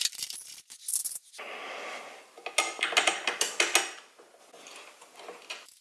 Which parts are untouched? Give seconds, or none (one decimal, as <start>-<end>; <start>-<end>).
0.0-5.8